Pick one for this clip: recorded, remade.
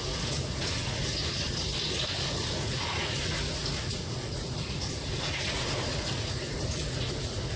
remade